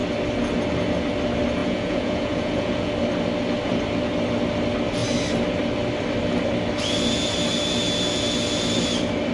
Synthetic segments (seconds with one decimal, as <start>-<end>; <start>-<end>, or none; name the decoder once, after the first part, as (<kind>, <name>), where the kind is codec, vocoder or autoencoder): 1.6-2.9 (vocoder, Vocos)